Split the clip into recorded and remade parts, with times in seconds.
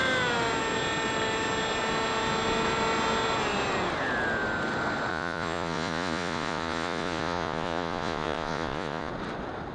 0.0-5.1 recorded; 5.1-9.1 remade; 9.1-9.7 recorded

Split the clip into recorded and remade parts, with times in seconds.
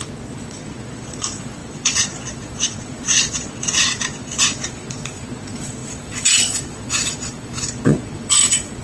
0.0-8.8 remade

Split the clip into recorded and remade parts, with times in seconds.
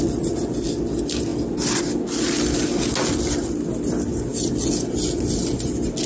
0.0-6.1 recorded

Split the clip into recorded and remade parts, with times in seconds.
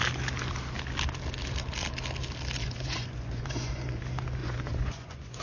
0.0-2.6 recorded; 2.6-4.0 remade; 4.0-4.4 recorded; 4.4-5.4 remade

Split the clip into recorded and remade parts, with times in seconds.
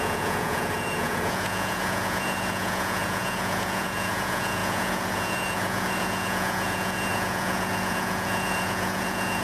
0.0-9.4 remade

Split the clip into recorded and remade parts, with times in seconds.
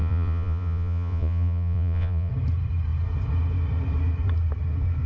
0.0-2.3 remade; 2.3-5.1 recorded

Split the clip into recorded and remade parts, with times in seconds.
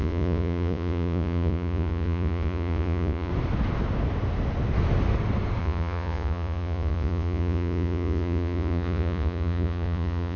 0.0-3.3 remade; 3.3-5.6 recorded; 5.6-10.4 remade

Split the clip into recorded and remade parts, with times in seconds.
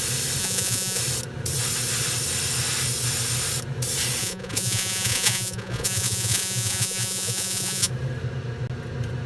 0.0-0.4 recorded; 0.4-1.0 remade; 1.0-4.2 recorded; 4.2-7.9 remade; 7.9-9.3 recorded